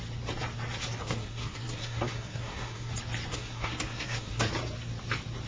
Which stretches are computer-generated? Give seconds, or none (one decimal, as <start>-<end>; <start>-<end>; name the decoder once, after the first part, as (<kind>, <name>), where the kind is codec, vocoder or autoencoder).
1.0-2.9 (codec, SNAC); 3.3-4.5